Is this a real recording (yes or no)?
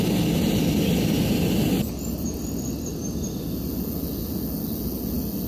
yes